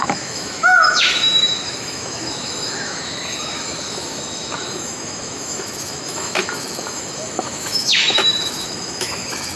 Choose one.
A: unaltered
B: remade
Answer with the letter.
B